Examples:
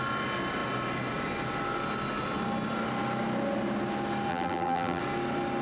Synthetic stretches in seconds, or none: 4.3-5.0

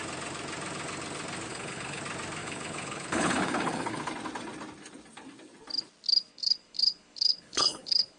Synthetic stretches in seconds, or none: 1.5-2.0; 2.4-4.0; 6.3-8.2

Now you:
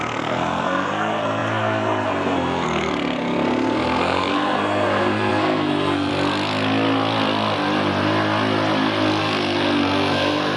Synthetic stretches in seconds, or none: 0.0-6.1; 9.2-10.6